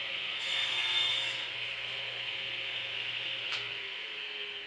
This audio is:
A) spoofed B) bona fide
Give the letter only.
A